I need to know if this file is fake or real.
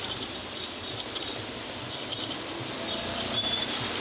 fake